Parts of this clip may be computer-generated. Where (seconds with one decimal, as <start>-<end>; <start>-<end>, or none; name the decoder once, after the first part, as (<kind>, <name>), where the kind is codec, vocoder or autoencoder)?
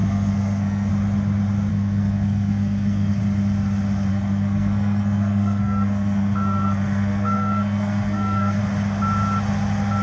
0.0-0.9 (codec, SNAC); 1.7-3.2; 4.1-8.6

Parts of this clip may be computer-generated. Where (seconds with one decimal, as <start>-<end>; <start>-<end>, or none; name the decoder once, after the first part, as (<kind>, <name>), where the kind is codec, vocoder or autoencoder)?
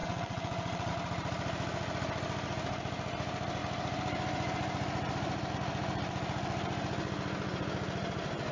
0.0-0.9 (vocoder, WaveNeXt)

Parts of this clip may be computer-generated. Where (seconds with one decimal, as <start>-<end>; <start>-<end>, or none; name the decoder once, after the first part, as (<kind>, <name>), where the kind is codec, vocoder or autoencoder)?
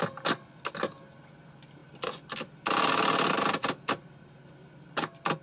none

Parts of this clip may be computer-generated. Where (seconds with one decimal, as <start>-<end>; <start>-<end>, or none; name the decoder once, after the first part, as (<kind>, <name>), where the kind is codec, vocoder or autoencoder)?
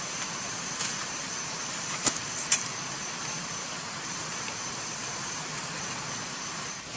1.0-2.4 (vocoder, BigVGAN v2); 3.4-5.6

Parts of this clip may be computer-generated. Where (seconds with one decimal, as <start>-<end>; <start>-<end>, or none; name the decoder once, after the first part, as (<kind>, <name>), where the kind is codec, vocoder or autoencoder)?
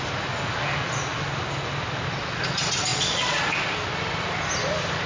2.9-3.4 (vocoder, Vocos)